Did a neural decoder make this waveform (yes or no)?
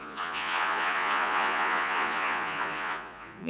yes